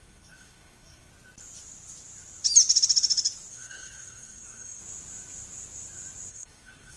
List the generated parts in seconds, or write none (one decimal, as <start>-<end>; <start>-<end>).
0.0-1.1; 3.5-4.8; 6.3-7.0